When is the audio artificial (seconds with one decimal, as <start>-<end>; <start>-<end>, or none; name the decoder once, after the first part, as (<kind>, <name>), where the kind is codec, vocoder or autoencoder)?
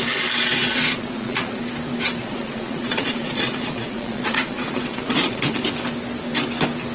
0.6-1.6 (vocoder, Vocos); 2.2-5.6